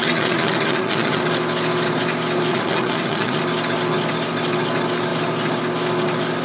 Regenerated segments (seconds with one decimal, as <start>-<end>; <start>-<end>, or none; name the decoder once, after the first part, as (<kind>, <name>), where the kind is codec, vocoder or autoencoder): 0.0-1.2 (vocoder, Vocos); 2.5-3.4